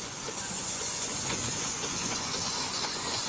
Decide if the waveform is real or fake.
fake